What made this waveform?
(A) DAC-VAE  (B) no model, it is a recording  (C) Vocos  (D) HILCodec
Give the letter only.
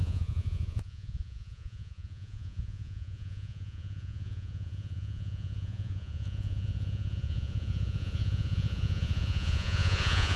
C